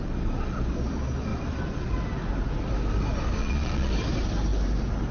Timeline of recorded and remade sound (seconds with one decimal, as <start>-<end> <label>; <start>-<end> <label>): 0.0-3.4 recorded; 3.4-3.9 remade; 3.9-5.1 recorded